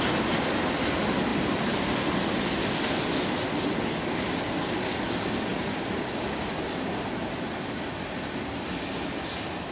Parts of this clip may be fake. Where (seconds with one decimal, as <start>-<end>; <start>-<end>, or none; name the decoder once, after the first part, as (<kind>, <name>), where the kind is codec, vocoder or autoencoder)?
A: none